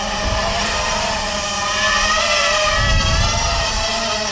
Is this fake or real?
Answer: fake